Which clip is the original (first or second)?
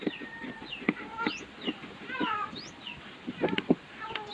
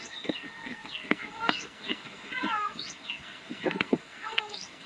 first